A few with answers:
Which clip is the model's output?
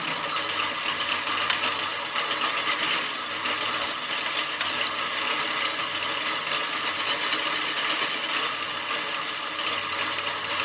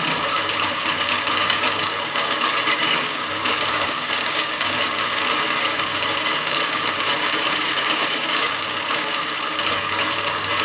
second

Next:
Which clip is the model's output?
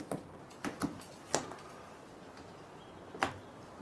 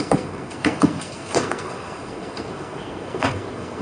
second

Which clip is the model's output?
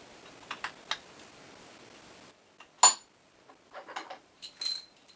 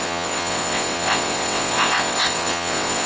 second